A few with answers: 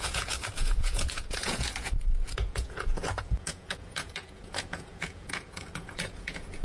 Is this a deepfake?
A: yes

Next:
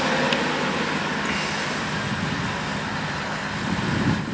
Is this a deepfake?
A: no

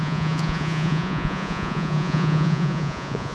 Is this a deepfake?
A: yes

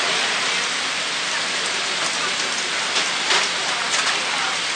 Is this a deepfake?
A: no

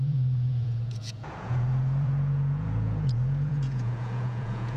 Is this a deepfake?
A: yes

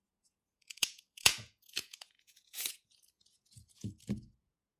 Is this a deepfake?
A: yes